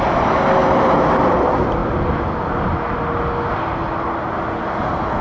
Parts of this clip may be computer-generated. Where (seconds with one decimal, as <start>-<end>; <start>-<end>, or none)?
0.6-1.3